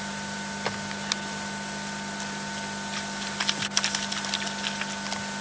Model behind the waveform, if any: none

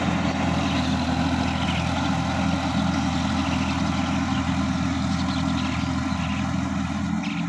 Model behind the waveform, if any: none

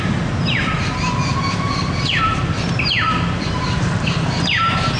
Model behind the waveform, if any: vocoder, BigVGAN v2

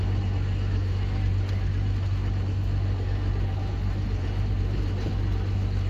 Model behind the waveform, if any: none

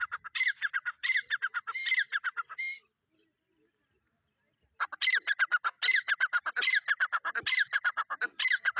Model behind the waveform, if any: none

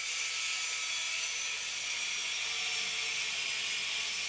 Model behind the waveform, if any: none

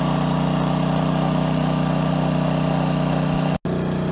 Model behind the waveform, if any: none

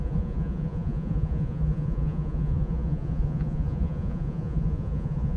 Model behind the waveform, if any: vocoder, Vocos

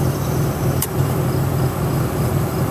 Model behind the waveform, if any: vocoder, BigVGAN v2